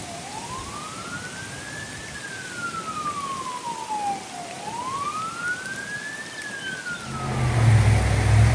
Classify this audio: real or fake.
real